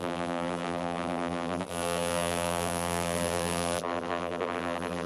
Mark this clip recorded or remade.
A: remade